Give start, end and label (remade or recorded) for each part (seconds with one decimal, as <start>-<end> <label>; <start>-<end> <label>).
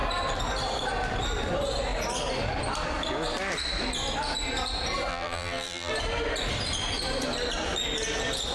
0.0-5.1 recorded; 5.1-5.9 remade; 5.9-8.5 recorded